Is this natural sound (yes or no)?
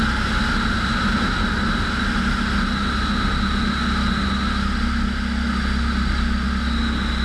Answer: yes